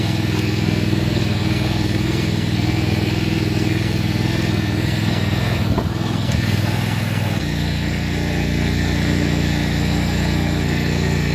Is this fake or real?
fake